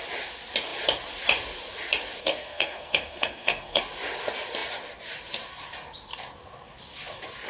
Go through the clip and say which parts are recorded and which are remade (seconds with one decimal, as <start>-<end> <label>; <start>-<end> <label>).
0.0-2.2 recorded; 2.2-3.8 remade; 3.8-7.5 recorded